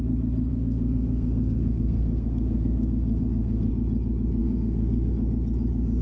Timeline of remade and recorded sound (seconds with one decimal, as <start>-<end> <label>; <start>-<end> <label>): 0.0-0.5 recorded; 0.5-3.7 remade; 3.7-4.4 recorded; 4.4-5.1 remade; 5.1-6.0 recorded